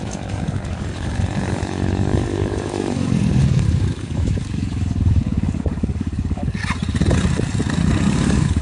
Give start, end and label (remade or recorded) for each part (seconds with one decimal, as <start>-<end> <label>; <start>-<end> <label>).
0.0-6.6 remade; 6.6-8.1 recorded; 8.1-8.6 remade